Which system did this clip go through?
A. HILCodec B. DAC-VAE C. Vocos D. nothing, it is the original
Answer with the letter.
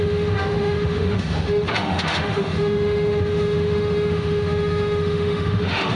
B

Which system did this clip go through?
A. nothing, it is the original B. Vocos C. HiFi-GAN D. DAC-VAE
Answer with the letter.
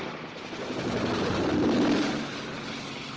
A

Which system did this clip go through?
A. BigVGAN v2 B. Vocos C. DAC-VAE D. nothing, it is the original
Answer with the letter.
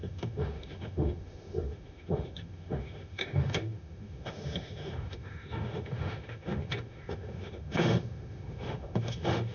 C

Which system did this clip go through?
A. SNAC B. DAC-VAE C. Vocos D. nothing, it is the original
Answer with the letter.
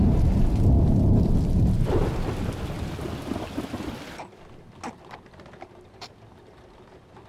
D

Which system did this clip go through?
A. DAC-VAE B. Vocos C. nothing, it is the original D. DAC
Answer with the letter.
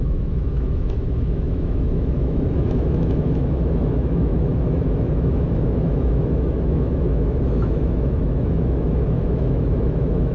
A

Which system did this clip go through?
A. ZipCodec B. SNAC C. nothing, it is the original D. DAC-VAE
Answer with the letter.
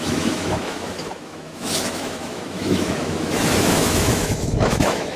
D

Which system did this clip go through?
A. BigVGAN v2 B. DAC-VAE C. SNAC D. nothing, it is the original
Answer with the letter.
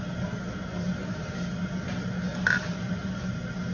D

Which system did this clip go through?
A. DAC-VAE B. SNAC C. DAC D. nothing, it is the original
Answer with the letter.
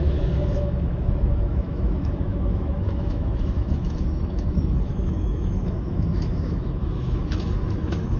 A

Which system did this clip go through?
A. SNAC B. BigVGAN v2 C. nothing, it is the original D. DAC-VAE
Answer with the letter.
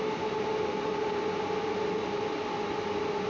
C